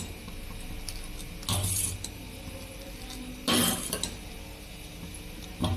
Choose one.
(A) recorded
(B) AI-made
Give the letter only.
A